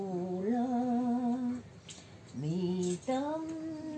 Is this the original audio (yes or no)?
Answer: yes